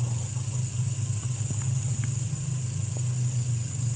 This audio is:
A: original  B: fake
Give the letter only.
A